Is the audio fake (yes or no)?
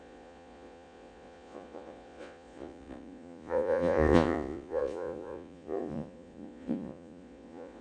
yes